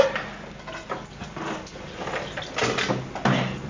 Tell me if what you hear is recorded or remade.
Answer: recorded